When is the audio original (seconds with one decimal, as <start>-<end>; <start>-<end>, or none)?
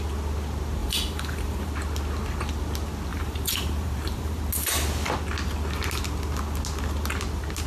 0.0-0.8; 1.7-3.1; 4.4-7.7